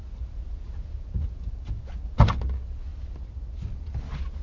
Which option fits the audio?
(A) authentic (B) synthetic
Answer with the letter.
A